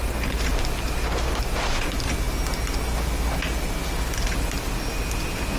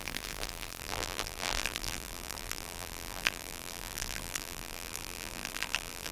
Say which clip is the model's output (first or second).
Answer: second